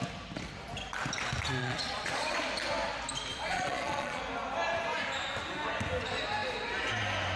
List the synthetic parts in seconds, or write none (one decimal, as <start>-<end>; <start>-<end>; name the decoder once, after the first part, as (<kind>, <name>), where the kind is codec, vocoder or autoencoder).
1.6-2.4 (vocoder, Vocos); 3.3-4.2